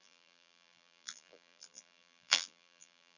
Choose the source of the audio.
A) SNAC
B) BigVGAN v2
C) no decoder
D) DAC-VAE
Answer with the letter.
B